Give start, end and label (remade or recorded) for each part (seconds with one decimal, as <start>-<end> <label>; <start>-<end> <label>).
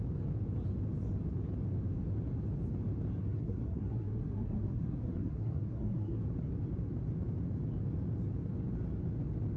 0.0-3.2 recorded; 3.2-6.2 remade; 6.2-9.6 recorded